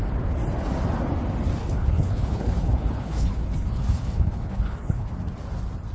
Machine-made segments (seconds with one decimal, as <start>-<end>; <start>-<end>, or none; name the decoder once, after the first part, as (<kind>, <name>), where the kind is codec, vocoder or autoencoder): 1.6-5.1 (codec, HILCodec)